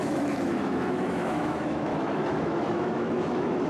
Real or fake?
fake